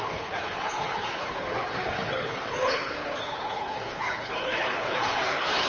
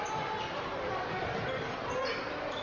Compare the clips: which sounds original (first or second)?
second